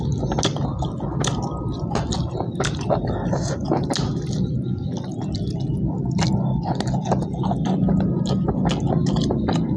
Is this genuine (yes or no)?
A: yes